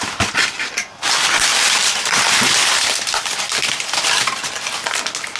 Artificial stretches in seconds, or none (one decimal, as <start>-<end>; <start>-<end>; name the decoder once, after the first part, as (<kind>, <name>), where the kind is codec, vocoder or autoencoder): 1.5-3.9 (vocoder, BigVGAN v2)